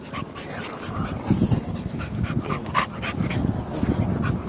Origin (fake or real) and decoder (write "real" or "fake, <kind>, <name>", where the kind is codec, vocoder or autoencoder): real